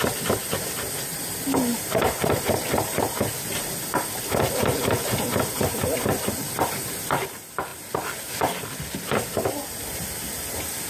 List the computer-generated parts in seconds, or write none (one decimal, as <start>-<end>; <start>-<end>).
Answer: 1.7-3.0